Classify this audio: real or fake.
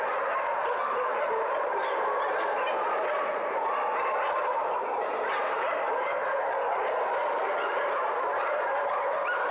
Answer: real